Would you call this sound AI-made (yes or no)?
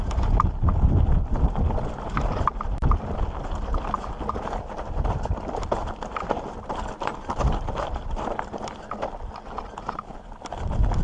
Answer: no